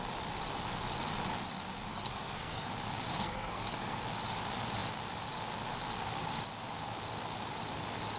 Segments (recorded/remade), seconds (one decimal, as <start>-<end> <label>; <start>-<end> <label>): 0.0-1.9 recorded; 1.9-2.7 remade; 2.7-3.1 recorded; 3.1-4.0 remade; 4.0-8.2 recorded